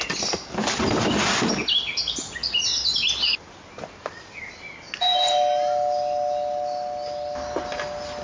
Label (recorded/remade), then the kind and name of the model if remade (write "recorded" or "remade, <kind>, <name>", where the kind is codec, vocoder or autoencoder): recorded